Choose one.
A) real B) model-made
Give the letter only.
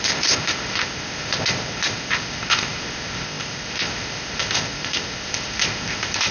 B